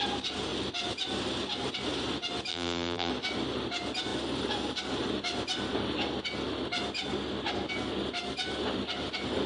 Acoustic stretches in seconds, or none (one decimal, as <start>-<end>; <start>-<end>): 0.0-2.5; 3.1-9.5